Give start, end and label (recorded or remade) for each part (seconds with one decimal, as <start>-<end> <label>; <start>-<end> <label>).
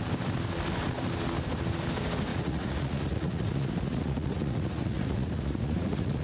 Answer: 0.0-2.3 recorded; 2.3-6.2 remade